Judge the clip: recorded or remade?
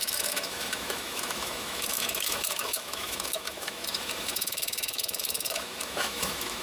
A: remade